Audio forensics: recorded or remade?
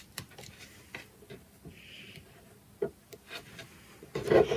recorded